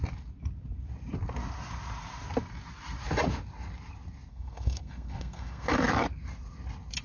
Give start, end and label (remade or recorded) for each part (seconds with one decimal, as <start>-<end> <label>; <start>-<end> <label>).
0.0-4.3 recorded; 4.3-5.7 remade; 5.7-7.0 recorded